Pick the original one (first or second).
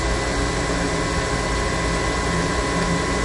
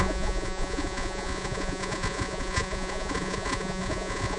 first